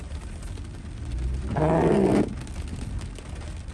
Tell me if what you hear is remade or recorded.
recorded